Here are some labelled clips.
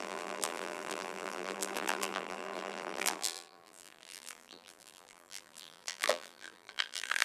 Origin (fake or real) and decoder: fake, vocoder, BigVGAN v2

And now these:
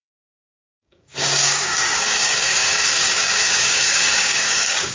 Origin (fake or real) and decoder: fake, codec, DAC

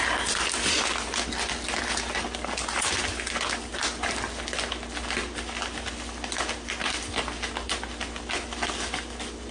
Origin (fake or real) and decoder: real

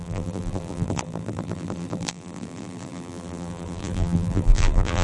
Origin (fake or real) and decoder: fake, vocoder, BigVGAN v2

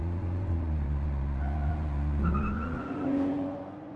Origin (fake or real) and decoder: fake, vocoder, Vocos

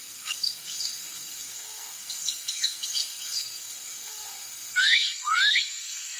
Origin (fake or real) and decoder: fake, codec, SNAC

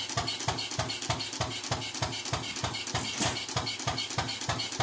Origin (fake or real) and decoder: real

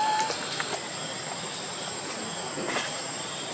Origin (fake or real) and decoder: fake, vocoder, BigVGAN v2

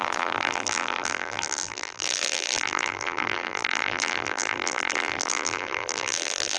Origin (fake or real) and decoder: fake, vocoder, BigVGAN v2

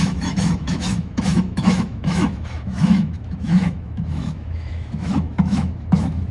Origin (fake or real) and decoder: fake, autoencoder, DAC-VAE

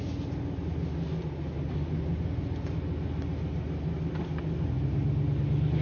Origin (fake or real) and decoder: real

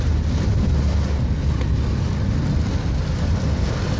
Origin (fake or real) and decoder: real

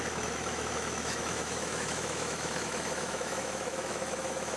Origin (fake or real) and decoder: fake, autoencoder, DAC-VAE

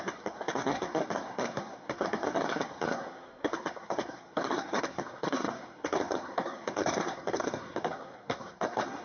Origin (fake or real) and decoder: fake, codec, SNAC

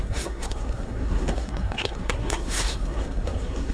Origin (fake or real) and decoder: fake, codec, SNAC